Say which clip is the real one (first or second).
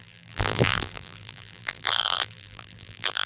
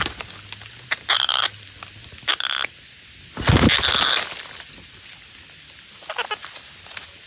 second